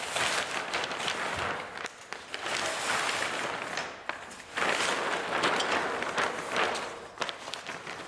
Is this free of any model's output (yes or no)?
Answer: yes